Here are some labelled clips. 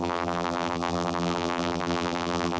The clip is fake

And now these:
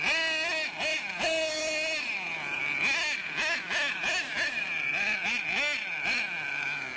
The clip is real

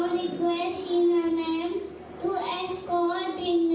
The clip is real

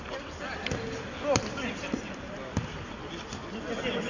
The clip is real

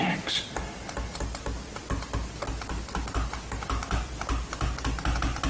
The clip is real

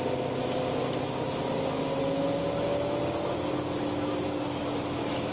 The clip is real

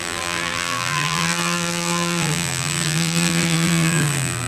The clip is fake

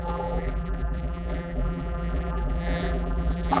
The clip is fake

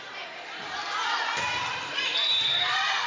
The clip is fake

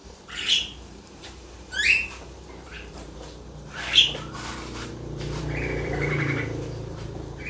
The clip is fake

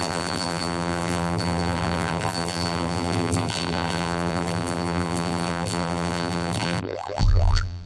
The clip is fake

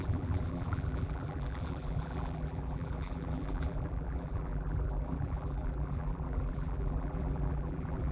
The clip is fake